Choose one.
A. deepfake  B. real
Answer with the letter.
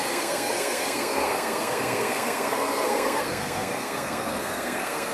A